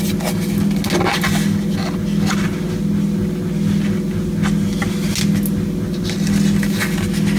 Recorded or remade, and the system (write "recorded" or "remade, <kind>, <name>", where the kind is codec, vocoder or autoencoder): recorded